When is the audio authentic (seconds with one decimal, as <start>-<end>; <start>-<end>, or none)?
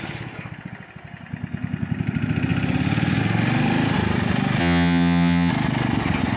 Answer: 0.0-4.6; 5.5-6.4